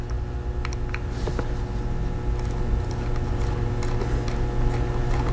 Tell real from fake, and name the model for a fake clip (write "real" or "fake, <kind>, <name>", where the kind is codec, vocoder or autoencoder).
real